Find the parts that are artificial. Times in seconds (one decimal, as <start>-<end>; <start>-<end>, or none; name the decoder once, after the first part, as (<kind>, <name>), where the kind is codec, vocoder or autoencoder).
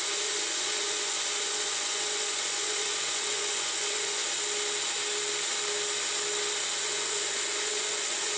0.0-4.2 (vocoder, Vocos); 6.8-8.4